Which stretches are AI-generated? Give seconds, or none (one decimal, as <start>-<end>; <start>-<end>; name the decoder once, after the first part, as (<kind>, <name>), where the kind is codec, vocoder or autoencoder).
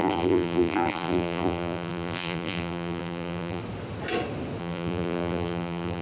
0.0-3.6 (vocoder, BigVGAN v2); 4.6-6.0